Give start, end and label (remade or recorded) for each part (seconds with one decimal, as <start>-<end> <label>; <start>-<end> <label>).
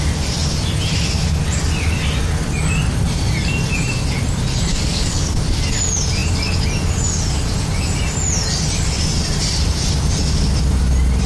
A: 0.0-4.7 recorded; 4.7-5.4 remade; 5.4-11.3 recorded